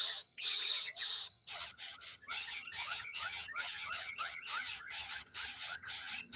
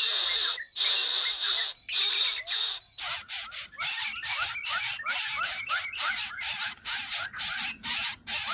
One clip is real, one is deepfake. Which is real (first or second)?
second